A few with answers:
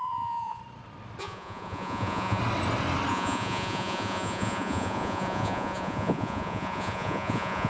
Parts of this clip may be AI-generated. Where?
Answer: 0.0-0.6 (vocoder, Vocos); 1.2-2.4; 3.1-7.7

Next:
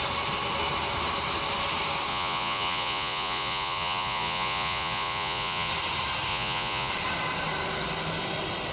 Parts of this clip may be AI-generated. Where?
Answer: 2.1-5.7 (vocoder, Vocos); 6.3-6.9